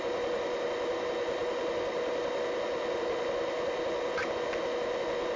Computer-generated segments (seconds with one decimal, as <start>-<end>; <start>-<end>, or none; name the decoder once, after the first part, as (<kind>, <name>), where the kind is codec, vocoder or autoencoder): none